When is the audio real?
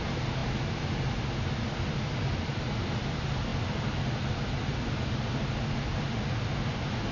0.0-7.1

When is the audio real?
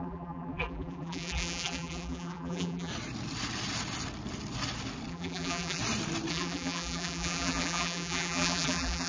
2.9-5.1; 5.8-6.3